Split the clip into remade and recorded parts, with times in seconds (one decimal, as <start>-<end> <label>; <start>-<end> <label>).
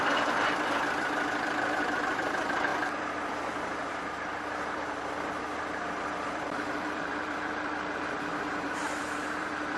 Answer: 0.0-9.8 remade